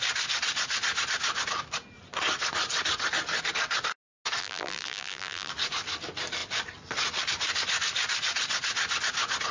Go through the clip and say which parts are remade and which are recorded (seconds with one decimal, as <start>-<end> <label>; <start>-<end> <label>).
0.0-4.4 recorded; 4.4-5.5 remade; 5.5-9.5 recorded